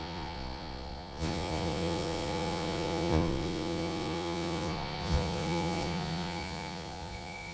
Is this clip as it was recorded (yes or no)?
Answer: no